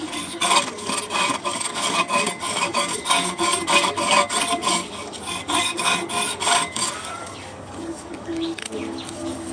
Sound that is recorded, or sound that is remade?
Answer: remade